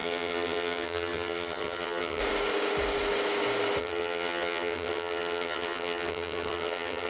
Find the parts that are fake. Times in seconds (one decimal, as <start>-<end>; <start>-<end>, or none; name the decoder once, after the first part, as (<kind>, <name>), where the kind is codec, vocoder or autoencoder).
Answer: 0.0-2.2 (vocoder, HiFi-GAN); 3.8-7.1